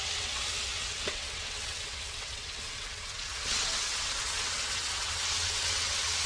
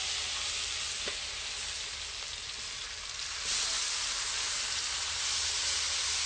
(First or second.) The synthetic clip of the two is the first